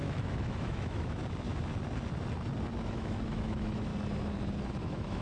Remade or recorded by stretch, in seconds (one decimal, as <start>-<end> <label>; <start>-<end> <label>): 0.0-1.2 remade; 1.2-2.8 recorded; 2.8-3.9 remade; 3.9-4.8 recorded; 4.8-5.2 remade